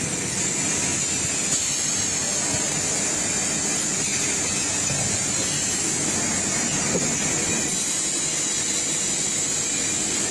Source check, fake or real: real